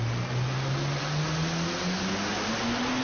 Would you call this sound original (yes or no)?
yes